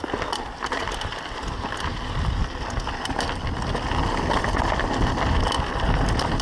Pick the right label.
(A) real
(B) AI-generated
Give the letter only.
A